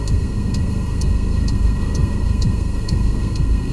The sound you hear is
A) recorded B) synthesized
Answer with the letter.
B